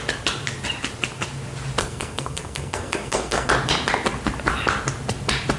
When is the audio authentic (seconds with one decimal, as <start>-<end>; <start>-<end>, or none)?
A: 0.0-1.8; 3.5-5.6